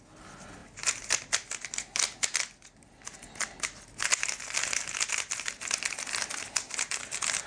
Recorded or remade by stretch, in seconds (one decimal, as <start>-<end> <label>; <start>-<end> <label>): 0.0-7.5 recorded